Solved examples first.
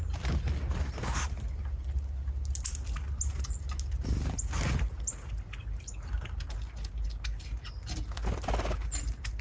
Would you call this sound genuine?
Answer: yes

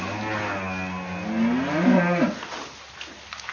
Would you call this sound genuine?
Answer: yes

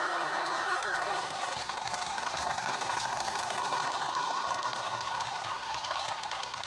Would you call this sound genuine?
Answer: no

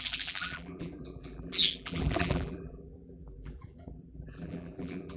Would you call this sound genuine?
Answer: no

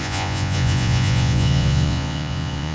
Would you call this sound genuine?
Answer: no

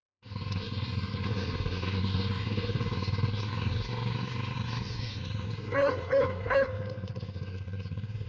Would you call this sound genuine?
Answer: no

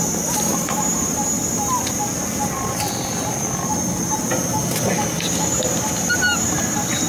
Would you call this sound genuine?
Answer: yes